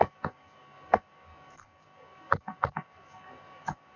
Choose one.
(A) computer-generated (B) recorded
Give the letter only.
A